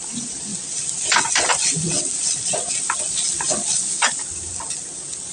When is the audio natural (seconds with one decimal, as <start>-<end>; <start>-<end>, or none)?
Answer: 0.0-5.3